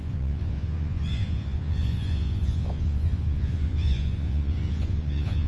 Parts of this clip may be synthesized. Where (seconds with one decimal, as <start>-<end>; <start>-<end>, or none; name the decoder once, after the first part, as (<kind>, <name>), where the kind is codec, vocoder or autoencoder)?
0.0-5.5 (vocoder, Vocos)